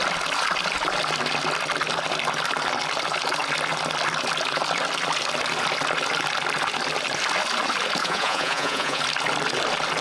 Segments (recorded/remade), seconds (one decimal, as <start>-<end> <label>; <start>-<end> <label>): 0.0-8.0 recorded; 8.0-9.0 remade; 9.0-10.0 recorded